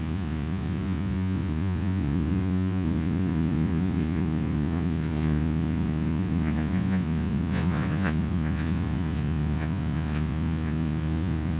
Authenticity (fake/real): fake